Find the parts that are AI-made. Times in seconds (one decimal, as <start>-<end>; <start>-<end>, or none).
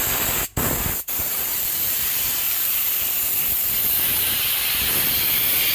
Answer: 1.2-3.0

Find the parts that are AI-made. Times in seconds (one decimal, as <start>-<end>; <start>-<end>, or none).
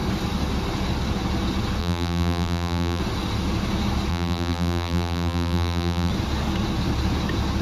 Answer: 1.8-3.0; 4.1-6.1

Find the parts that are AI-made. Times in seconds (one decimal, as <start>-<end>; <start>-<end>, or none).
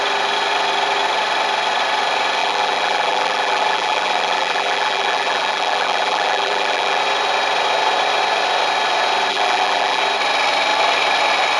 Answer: 2.4-7.0; 9.3-10.0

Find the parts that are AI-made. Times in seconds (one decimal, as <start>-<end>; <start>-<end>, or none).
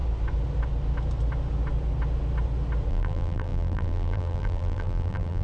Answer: 2.9-5.4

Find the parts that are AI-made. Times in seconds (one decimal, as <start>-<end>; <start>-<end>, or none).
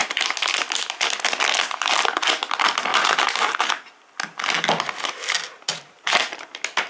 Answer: 2.9-3.7; 5.7-6.5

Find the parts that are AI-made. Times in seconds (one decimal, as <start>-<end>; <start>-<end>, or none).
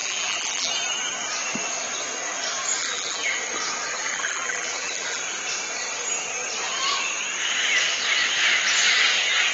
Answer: 0.0-0.7; 2.8-3.3; 3.9-5.2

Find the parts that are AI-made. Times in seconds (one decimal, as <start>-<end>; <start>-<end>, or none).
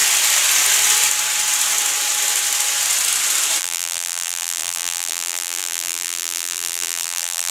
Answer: 3.6-7.5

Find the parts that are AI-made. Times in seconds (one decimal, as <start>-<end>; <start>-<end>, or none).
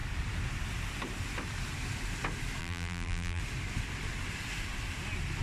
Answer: 2.6-3.4